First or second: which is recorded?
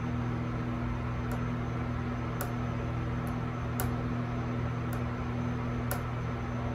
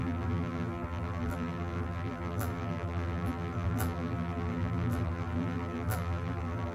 first